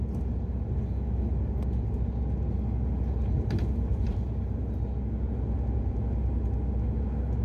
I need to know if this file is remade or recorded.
recorded